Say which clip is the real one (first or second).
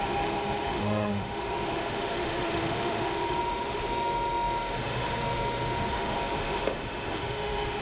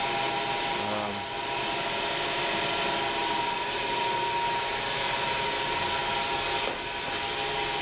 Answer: second